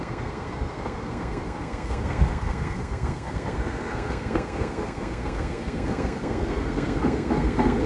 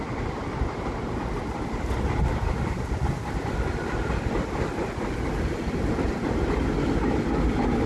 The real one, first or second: second